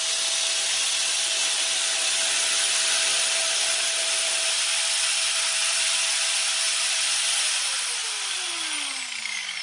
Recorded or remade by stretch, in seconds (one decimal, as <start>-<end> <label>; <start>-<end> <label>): 0.0-9.6 recorded